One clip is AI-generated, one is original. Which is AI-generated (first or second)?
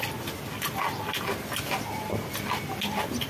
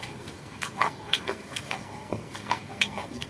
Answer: second